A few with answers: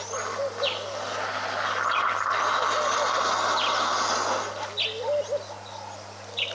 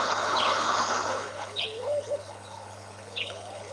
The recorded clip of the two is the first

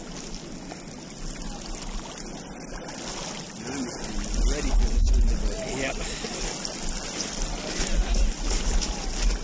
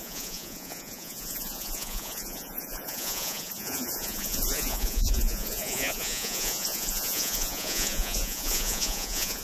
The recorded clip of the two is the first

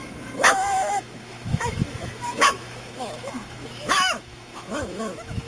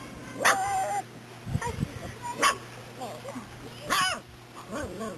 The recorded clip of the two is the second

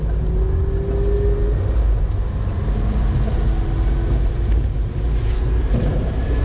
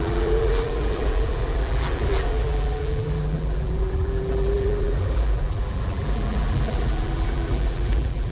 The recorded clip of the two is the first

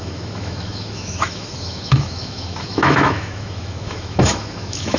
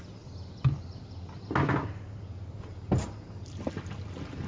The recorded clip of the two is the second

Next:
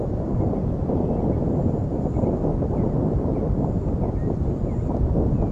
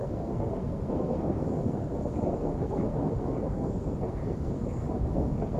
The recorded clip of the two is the first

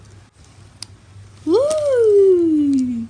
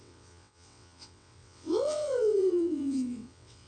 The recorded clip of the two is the first